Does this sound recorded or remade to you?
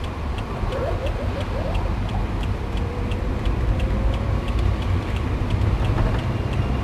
remade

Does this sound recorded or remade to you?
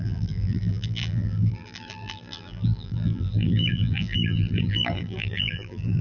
remade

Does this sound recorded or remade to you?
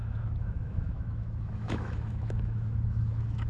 remade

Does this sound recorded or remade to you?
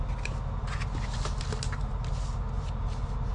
recorded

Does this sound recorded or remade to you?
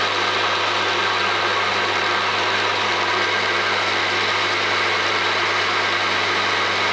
recorded